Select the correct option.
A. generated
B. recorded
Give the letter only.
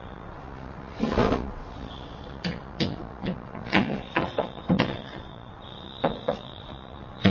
A